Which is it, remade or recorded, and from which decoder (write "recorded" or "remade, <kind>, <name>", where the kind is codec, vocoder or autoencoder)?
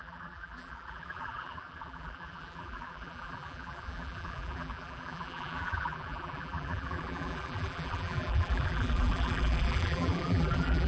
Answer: remade, vocoder, BigVGAN v2